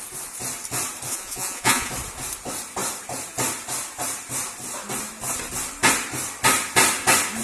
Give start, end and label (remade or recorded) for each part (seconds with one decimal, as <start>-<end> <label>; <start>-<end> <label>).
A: 0.0-1.1 recorded; 1.1-1.9 remade; 1.9-7.4 recorded